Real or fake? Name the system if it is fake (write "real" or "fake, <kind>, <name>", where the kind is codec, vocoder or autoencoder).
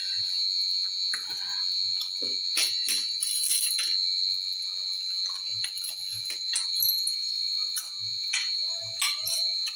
real